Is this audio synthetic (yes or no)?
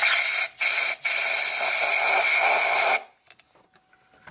no